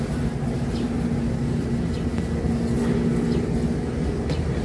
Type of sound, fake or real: real